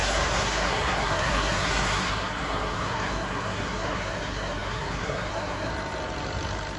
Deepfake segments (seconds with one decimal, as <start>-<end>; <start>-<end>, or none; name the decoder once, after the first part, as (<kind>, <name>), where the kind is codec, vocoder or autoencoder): 0.0-5.7 (codec, SNAC)

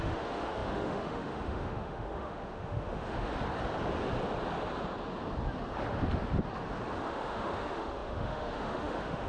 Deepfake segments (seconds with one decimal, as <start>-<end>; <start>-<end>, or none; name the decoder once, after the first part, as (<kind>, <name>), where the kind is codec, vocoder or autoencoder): 0.0-3.3 (autoencoder, DAC-VAE); 7.0-9.3

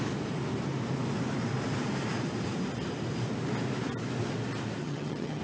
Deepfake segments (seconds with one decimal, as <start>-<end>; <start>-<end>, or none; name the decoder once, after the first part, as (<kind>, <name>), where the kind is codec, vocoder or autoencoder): 4.8-5.4 (vocoder, HiFi-GAN)

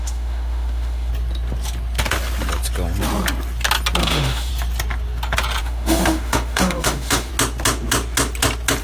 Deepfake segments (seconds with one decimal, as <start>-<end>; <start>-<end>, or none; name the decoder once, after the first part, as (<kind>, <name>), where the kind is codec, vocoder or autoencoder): 0.0-1.1 (autoencoder, DAC-VAE); 4.0-4.5; 5.6-7.3